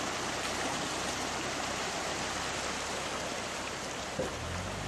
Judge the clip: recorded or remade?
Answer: recorded